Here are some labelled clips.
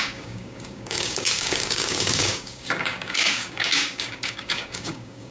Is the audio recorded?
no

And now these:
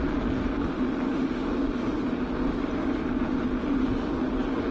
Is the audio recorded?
yes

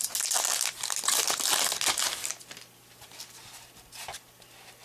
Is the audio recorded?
yes